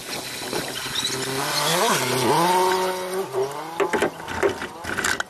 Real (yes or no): yes